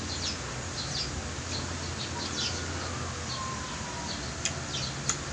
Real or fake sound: real